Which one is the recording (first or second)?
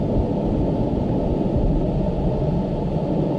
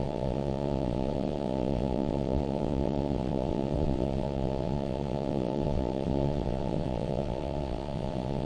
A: first